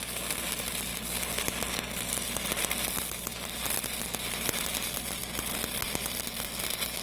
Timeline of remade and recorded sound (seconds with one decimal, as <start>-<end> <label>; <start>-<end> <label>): 0.0-7.0 recorded